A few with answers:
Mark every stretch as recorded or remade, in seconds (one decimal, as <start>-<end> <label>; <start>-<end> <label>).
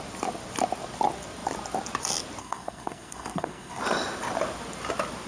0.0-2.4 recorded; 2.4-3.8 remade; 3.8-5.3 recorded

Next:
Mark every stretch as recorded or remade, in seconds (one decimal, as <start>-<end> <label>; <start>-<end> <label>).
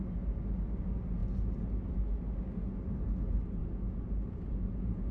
0.0-3.6 recorded; 3.6-5.1 remade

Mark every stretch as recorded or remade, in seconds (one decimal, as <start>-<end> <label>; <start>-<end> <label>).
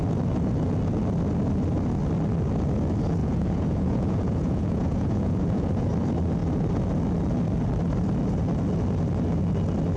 0.0-3.2 recorded; 3.2-5.9 remade; 5.9-10.0 recorded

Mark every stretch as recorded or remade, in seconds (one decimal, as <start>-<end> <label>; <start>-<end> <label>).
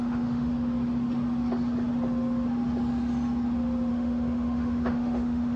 0.0-0.5 remade; 0.5-3.9 recorded; 3.9-5.6 remade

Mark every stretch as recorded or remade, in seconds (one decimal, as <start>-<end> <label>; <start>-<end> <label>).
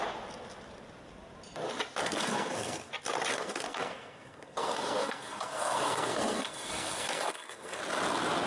0.0-2.0 recorded; 2.0-2.9 remade; 2.9-3.3 recorded; 3.3-7.8 remade; 7.8-8.5 recorded